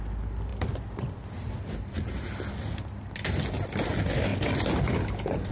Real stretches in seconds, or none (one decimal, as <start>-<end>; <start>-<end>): 0.0-0.5; 1.5-5.5